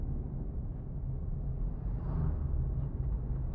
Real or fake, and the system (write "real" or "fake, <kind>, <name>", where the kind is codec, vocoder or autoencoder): real